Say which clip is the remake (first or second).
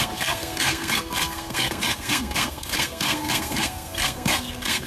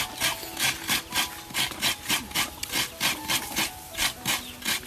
first